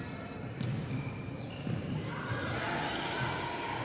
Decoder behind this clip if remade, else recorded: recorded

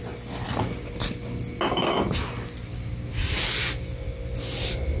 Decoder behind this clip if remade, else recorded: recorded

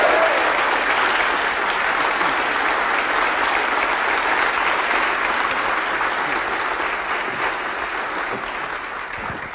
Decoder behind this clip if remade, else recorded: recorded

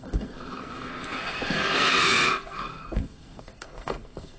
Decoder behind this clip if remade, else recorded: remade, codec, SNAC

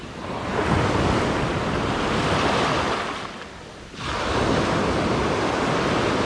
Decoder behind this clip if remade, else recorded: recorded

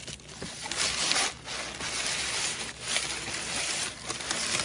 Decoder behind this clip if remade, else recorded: recorded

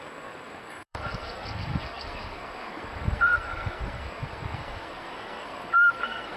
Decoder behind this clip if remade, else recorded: remade, codec, SNAC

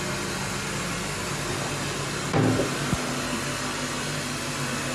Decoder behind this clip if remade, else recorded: recorded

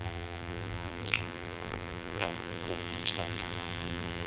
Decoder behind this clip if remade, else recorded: remade, vocoder, BigVGAN v2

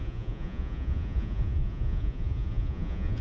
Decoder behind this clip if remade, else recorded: remade, vocoder, Vocos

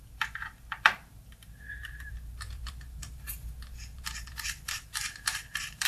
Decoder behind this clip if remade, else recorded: remade, vocoder, BigVGAN v2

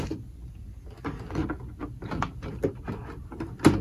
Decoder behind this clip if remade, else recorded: recorded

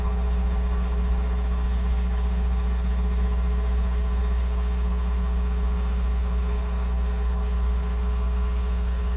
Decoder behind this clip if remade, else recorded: remade, codec, HILCodec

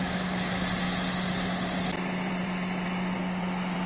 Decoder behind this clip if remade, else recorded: recorded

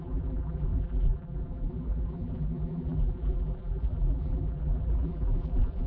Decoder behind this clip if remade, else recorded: remade, vocoder, BigVGAN v2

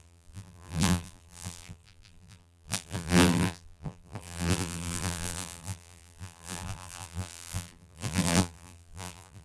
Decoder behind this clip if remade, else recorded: remade, vocoder, BigVGAN v2